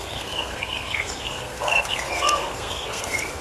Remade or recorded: remade